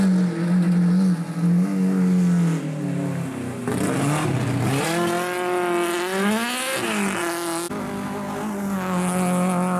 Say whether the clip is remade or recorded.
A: recorded